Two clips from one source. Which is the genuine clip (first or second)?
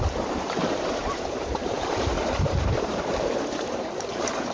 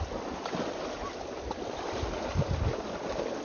second